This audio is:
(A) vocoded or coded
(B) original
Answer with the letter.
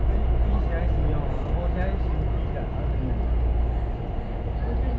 B